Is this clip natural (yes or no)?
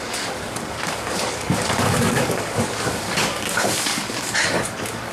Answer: no